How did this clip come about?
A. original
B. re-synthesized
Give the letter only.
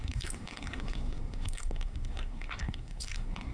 B